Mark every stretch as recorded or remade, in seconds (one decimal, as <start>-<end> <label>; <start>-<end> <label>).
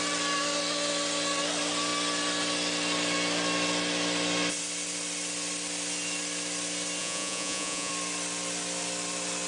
0.0-7.0 recorded; 7.0-7.9 remade; 7.9-9.5 recorded